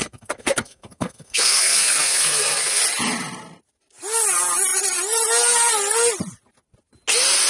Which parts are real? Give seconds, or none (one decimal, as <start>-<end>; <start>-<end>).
2.8-7.5

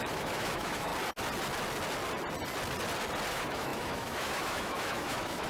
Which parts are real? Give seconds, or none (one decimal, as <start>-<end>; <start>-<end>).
0.9-3.3